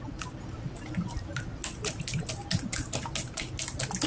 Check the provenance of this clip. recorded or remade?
recorded